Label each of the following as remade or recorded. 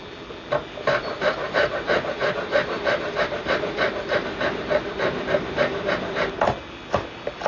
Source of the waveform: recorded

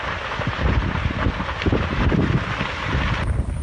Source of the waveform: recorded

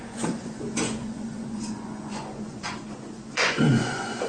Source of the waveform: remade